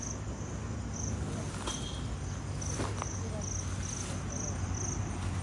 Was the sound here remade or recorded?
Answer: recorded